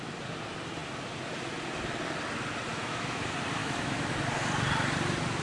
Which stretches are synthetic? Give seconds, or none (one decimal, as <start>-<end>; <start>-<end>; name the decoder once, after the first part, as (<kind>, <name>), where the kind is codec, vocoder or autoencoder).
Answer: 2.7-3.2 (autoencoder, DAC-VAE); 3.6-4.1